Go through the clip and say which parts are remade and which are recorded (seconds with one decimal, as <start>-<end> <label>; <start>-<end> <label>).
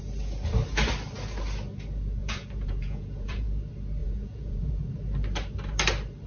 0.0-2.2 recorded; 2.2-3.6 remade; 3.6-4.0 recorded; 4.0-4.8 remade; 4.8-6.3 recorded